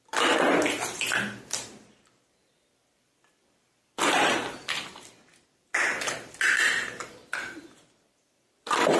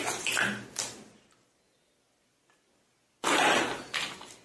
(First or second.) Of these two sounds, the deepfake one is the first